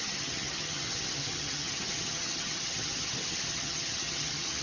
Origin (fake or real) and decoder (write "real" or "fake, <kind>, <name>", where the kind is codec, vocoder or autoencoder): fake, vocoder, HiFi-GAN